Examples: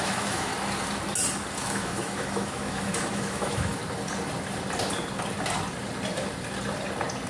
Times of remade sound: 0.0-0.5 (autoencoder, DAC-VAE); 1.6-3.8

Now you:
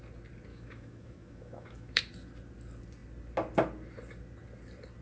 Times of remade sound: 0.5-2.0 (autoencoder, DAC-VAE)

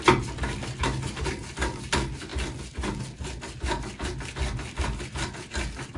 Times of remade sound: none

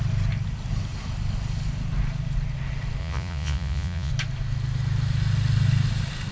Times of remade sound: 3.0-4.1 (vocoder, Vocos)